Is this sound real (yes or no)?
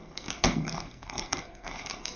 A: no